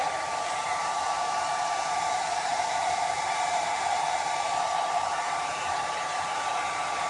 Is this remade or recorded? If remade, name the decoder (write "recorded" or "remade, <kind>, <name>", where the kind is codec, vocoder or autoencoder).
remade, vocoder, BigVGAN v2